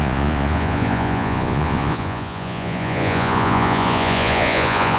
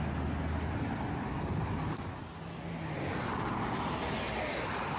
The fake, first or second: first